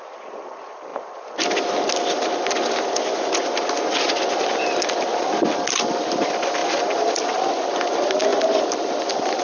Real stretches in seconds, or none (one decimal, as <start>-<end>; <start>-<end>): 0.0-9.4